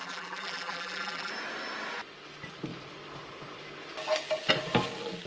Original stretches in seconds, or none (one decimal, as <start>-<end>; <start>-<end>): 1.3-5.3